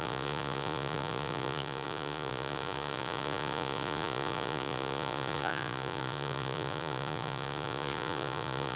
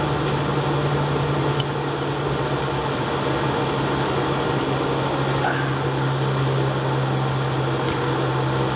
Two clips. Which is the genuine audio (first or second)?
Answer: second